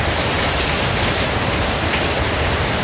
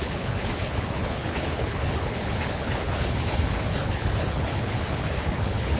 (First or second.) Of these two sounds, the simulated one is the second